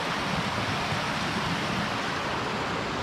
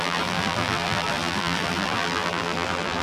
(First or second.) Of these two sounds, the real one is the first